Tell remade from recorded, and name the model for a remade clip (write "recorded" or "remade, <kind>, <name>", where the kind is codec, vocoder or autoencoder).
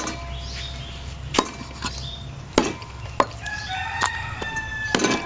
recorded